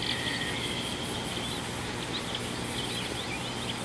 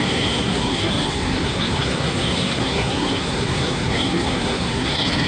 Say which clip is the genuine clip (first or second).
first